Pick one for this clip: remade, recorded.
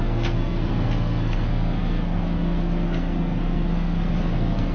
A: remade